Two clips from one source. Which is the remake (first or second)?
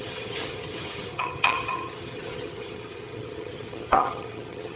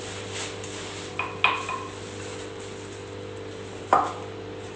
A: first